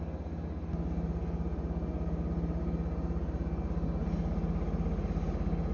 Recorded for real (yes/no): yes